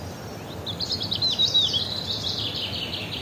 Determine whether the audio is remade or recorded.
recorded